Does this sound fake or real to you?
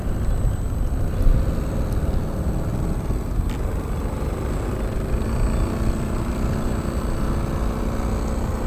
real